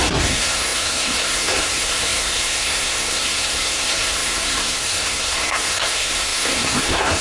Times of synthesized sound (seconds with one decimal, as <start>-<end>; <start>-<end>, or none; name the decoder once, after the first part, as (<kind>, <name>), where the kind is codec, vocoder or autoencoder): 0.0-7.2 (codec, SNAC)